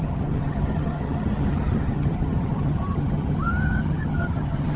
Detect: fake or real fake